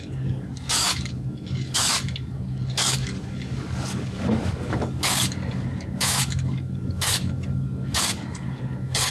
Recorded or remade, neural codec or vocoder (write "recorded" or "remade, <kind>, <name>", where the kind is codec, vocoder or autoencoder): remade, codec, DAC